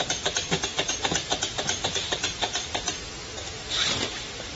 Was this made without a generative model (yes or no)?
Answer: no